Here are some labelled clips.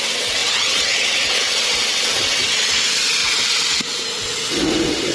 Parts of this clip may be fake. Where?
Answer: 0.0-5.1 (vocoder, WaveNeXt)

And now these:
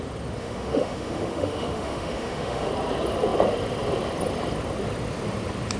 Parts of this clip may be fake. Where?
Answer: 0.4-2.7 (autoencoder, DAC-VAE)

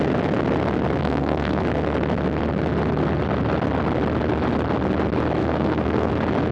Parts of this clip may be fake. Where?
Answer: 1.0-1.6 (codec, SNAC); 5.4-6.1

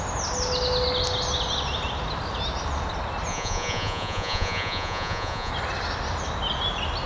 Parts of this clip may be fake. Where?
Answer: 3.3-5.5 (vocoder, Vocos)

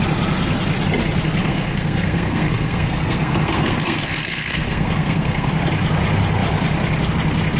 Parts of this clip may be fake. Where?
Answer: 1.4-5.5 (codec, SNAC)